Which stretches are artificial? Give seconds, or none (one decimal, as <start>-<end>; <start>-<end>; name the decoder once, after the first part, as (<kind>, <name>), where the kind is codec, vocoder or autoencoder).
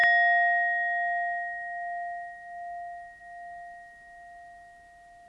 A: none